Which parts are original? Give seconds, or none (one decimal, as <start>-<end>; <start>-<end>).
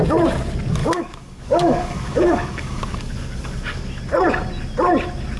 0.0-0.8; 4.0-5.4